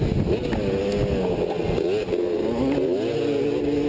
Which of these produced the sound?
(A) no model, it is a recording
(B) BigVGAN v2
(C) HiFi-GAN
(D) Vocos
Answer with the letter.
A